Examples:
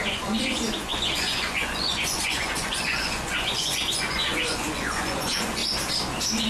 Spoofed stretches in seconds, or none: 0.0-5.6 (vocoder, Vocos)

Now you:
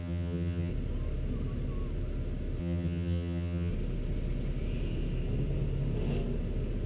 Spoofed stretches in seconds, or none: 0.0-0.7 (vocoder, HiFi-GAN); 2.6-3.7

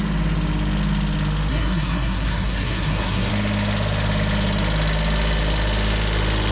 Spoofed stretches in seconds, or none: 1.5-3.3 (codec, SNAC)

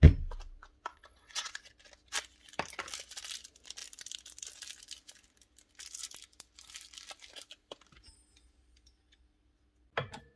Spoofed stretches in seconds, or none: 0.9-1.6 (vocoder, WaveNeXt)